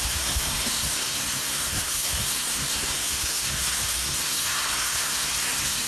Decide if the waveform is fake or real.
fake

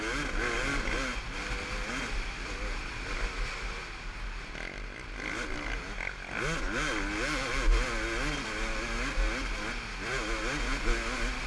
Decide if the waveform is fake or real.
real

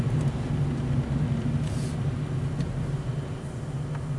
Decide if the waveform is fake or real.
real